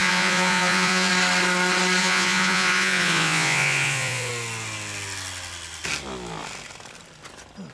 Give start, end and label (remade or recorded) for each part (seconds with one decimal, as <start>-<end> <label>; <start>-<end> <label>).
0.0-1.1 remade; 1.1-2.0 recorded; 2.0-4.3 remade; 4.3-7.7 recorded